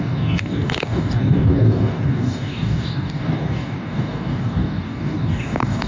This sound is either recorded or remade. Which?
remade